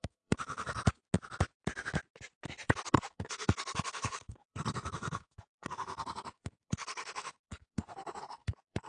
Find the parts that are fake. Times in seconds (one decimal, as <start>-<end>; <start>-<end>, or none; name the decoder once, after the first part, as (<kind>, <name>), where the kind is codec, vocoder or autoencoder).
0.0-0.8 (codec, SNAC); 2.9-8.9